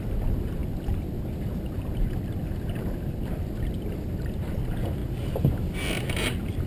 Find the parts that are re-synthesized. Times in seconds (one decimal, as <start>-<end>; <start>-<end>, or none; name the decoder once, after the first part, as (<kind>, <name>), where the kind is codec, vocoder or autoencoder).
none